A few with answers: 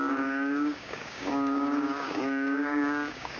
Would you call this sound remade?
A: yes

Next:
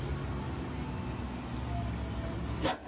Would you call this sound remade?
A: no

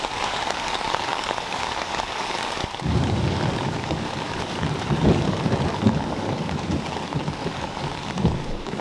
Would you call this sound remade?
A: yes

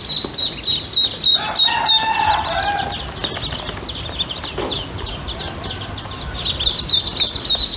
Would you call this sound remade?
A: no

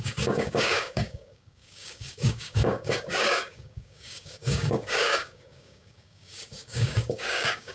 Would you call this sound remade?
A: yes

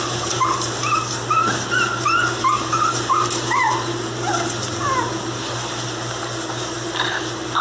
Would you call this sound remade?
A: no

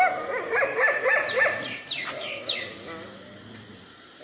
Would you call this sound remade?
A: no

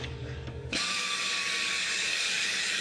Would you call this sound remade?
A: yes